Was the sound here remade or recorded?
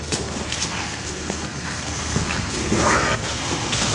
remade